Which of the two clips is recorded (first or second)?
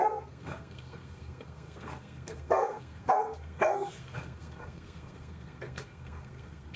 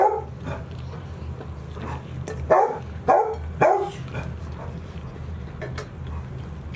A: second